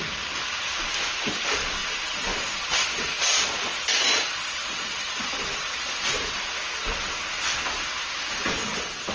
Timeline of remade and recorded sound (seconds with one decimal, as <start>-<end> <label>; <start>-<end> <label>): 0.0-1.8 recorded; 1.8-5.7 remade; 5.7-8.4 recorded; 8.4-9.1 remade